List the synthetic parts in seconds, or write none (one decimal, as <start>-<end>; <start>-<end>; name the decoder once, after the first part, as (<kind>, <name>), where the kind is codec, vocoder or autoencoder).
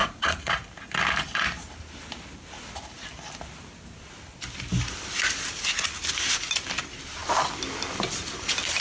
0.0-0.5 (vocoder, Vocos)